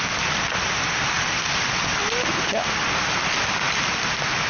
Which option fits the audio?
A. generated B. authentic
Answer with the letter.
B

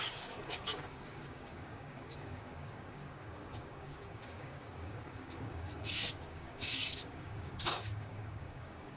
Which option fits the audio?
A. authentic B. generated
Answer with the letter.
B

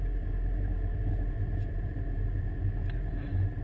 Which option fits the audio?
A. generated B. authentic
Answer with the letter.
A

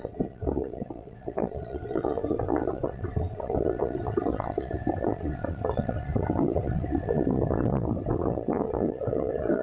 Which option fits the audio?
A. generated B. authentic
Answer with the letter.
A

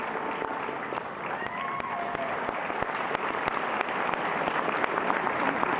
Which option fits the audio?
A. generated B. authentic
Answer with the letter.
B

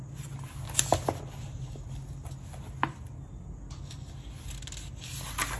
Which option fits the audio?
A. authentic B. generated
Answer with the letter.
A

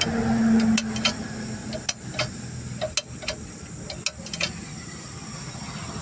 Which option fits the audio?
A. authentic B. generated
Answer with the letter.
A